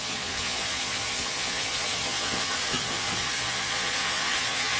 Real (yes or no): no